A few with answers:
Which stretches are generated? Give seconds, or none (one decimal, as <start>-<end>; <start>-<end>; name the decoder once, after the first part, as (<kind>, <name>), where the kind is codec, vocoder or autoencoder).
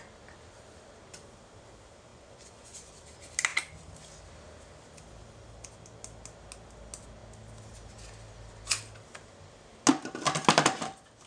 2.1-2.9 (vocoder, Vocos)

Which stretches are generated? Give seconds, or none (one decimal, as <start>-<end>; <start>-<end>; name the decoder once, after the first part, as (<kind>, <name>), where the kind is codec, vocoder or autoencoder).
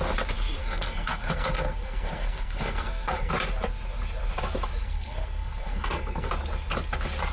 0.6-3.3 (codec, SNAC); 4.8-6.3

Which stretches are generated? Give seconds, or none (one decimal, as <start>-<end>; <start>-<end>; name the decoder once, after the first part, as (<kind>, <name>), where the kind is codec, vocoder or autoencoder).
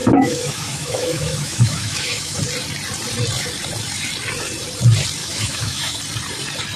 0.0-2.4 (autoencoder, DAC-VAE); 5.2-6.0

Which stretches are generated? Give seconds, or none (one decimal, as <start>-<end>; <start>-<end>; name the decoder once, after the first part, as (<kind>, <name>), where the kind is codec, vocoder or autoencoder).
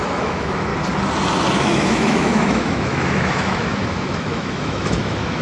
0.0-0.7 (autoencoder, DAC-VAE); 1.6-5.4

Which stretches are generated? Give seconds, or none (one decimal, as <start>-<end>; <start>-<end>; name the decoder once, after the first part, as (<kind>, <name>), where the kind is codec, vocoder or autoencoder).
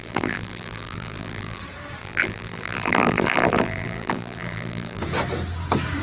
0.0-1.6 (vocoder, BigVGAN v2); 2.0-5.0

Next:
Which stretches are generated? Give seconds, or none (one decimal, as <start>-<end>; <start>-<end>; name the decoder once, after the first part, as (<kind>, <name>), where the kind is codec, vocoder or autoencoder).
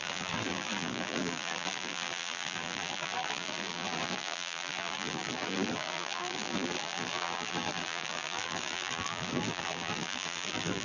0.0-10.8 (vocoder, BigVGAN v2)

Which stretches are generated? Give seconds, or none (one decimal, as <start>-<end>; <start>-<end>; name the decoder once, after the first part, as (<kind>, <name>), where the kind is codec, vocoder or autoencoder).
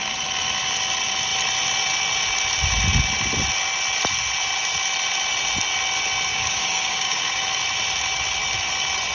6.3-7.4 (codec, DAC)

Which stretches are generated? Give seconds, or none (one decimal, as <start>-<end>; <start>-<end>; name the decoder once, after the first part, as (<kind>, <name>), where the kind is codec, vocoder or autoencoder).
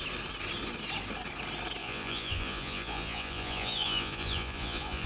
1.8-5.1 (vocoder, Vocos)